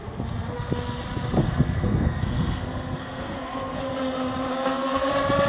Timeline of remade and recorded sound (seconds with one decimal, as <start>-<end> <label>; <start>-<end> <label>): 0.0-1.4 recorded; 1.4-3.8 remade; 3.8-4.5 recorded; 4.5-5.1 remade; 5.1-5.5 recorded